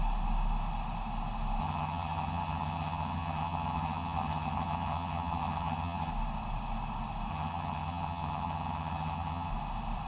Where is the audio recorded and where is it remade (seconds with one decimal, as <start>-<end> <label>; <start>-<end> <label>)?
0.0-1.6 recorded; 1.6-6.1 remade; 6.1-7.3 recorded; 7.3-9.5 remade; 9.5-10.1 recorded